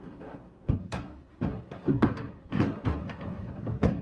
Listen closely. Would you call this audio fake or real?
fake